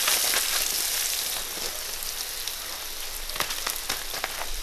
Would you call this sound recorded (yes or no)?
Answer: yes